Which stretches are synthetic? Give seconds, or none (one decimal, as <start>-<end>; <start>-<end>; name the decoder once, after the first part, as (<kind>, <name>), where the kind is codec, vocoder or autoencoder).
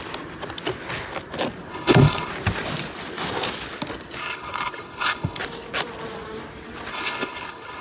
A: 1.7-2.3 (codec, HILCodec); 4.2-5.4; 6.9-7.8